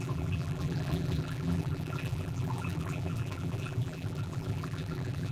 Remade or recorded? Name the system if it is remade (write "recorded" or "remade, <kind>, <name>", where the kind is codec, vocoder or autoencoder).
remade, vocoder, BigVGAN v2